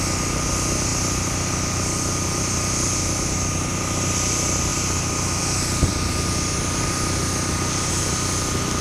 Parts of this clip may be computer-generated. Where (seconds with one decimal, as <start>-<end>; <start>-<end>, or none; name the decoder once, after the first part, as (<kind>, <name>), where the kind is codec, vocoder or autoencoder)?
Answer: none